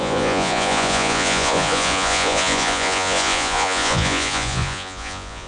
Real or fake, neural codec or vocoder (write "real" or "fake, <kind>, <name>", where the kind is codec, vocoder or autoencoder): fake, vocoder, Vocos